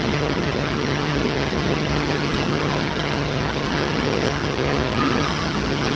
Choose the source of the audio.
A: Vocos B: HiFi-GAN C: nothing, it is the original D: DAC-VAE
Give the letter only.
B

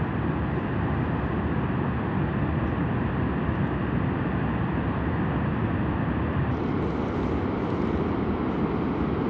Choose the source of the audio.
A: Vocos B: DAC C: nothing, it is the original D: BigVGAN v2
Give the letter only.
C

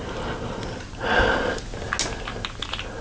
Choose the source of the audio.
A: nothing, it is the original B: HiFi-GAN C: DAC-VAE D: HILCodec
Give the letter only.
A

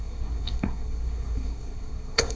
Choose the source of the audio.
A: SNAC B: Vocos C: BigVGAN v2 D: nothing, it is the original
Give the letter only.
A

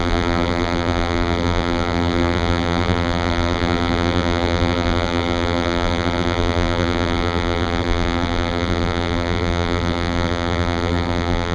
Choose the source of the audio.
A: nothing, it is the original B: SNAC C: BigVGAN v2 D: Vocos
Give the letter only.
C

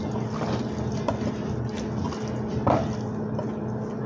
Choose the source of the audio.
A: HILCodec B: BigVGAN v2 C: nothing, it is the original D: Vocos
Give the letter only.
C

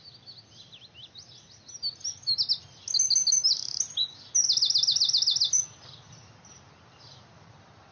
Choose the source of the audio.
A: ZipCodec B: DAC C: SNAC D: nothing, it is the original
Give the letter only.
D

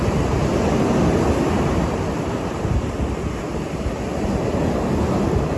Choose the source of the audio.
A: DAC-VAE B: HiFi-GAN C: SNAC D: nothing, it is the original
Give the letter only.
D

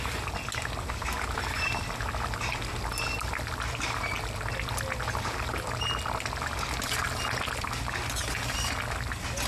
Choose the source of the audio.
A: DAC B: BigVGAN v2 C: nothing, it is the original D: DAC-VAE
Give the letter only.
C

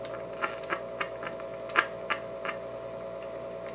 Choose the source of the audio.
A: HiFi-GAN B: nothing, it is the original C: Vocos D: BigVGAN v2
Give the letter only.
B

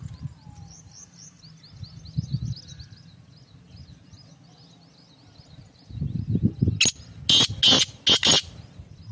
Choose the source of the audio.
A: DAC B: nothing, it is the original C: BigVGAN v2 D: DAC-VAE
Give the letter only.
B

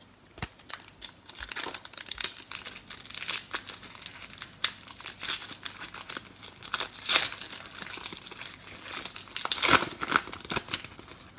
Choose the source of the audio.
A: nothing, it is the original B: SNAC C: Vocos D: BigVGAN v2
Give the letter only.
A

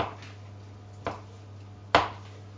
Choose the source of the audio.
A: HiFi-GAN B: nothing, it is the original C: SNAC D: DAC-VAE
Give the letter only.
B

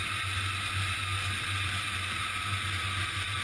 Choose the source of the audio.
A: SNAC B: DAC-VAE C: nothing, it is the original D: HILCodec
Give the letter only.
C